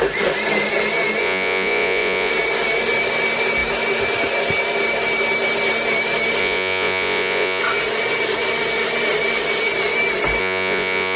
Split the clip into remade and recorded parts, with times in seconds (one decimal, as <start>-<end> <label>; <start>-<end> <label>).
0.0-1.2 recorded; 1.2-2.3 remade; 2.3-6.4 recorded; 6.4-7.6 remade; 7.6-10.4 recorded; 10.4-11.2 remade